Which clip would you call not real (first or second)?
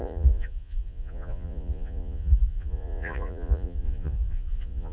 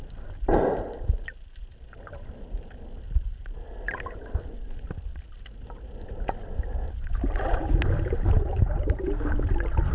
first